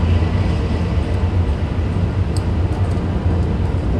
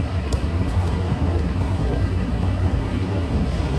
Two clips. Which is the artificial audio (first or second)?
second